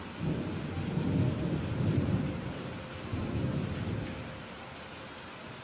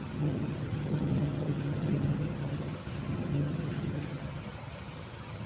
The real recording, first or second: first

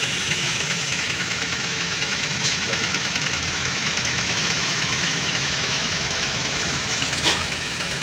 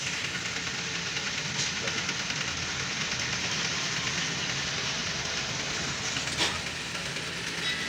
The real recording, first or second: second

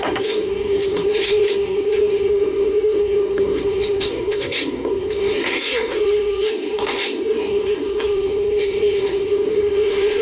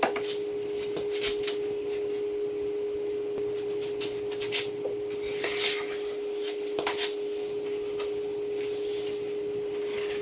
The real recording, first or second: second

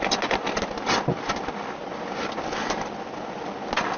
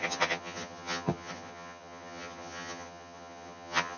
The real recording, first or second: first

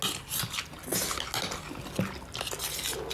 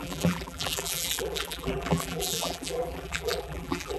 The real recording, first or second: first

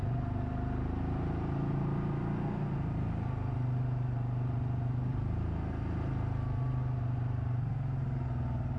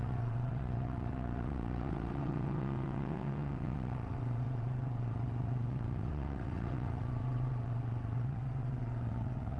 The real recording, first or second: first